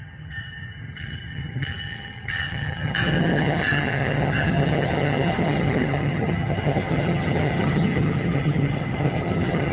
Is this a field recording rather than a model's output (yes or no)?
no